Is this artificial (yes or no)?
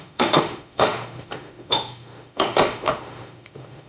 yes